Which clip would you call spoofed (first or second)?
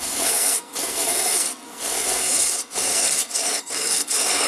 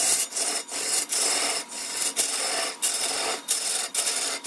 first